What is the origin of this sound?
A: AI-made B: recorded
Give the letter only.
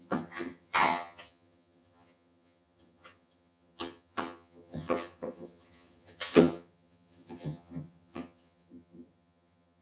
A